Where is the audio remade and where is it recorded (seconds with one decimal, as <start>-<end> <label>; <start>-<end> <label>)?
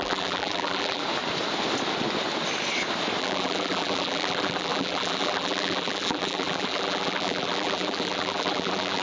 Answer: 0.0-1.0 remade; 1.0-3.2 recorded; 3.2-9.0 remade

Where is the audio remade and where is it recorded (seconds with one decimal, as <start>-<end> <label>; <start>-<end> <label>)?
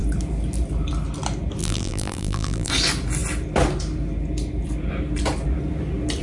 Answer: 0.0-1.6 recorded; 1.6-2.7 remade; 2.7-6.2 recorded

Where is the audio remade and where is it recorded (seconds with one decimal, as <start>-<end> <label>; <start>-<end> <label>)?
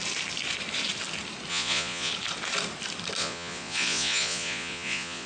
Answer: 0.0-1.5 recorded; 1.5-2.1 remade; 2.1-3.2 recorded; 3.2-5.3 remade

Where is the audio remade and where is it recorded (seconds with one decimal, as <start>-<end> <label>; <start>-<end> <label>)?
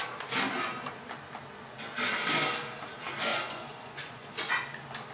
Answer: 0.0-3.3 recorded; 3.3-4.5 remade; 4.5-5.1 recorded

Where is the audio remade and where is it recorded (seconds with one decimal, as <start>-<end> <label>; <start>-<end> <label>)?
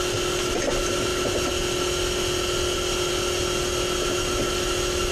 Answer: 0.0-5.1 recorded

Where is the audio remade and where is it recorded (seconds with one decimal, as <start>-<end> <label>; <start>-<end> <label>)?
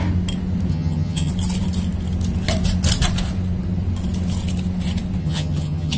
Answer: 0.0-0.7 recorded; 0.7-1.3 remade; 1.3-5.2 recorded; 5.2-6.0 remade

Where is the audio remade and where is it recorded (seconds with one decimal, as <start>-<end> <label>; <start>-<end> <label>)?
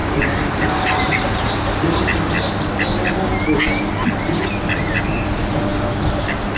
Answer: 0.0-1.5 remade; 1.5-6.6 recorded